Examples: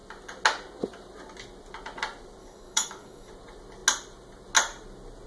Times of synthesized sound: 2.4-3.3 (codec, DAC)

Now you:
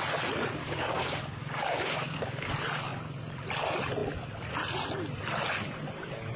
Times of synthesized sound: 0.6-2.5 (codec, DAC)